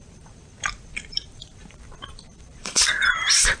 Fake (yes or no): yes